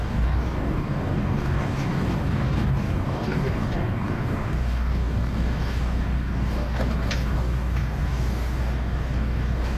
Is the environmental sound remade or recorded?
remade